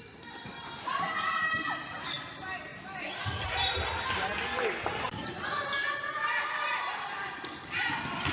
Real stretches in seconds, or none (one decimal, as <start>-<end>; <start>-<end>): 0.0-8.3